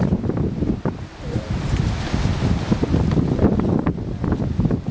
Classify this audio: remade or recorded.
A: recorded